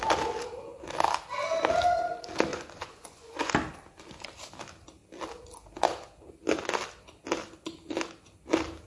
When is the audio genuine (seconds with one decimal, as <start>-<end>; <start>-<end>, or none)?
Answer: 0.0-2.5; 3.5-8.9